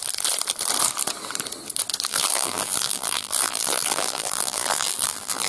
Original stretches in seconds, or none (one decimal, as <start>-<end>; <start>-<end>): 0.0-2.1